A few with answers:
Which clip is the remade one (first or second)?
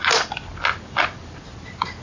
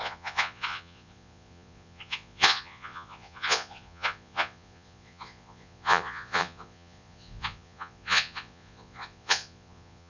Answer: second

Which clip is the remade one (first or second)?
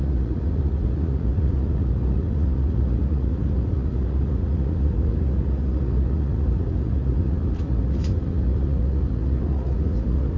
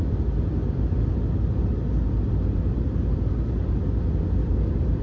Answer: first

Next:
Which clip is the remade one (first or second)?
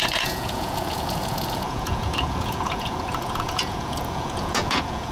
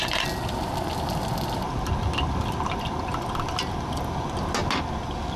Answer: first